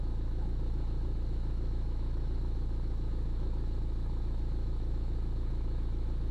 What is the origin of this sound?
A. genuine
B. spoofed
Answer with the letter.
B